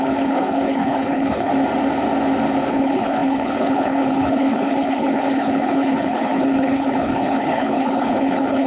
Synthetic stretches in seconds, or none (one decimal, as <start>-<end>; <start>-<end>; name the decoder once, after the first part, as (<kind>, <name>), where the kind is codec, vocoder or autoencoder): 0.0-1.5 (codec, HILCodec); 2.7-8.7